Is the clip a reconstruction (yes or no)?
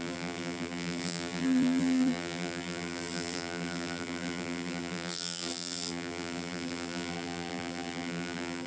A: yes